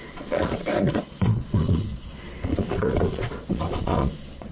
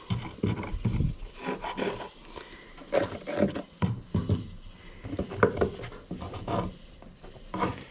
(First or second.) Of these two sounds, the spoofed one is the first